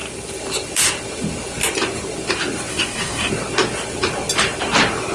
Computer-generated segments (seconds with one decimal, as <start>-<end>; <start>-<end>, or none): 2.7-3.3